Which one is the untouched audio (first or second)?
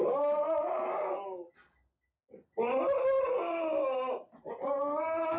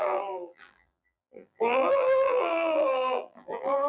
first